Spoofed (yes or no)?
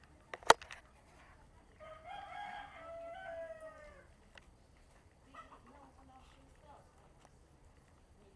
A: no